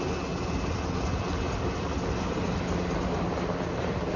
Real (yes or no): yes